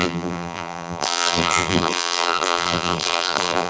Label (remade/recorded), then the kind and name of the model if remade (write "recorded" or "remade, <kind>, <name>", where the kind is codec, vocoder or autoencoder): remade, vocoder, BigVGAN v2